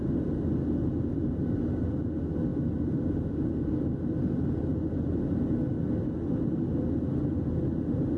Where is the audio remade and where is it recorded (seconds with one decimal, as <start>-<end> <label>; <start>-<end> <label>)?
0.0-8.2 recorded